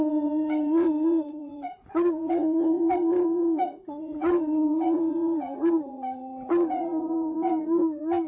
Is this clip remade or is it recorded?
remade